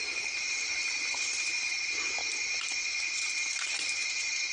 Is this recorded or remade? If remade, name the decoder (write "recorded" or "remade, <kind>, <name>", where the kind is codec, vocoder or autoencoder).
recorded